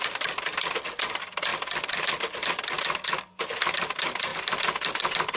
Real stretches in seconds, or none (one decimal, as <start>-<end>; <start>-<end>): 0.0-5.4